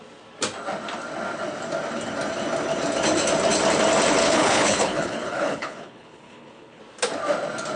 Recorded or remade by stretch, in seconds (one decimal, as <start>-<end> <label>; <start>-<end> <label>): 0.0-4.2 recorded; 4.2-6.8 remade; 6.8-7.8 recorded